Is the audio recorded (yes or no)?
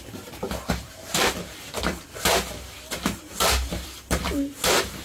no